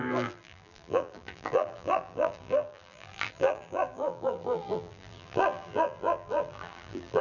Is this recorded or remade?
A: remade